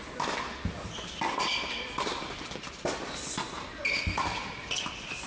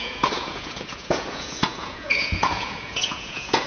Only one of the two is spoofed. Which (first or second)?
second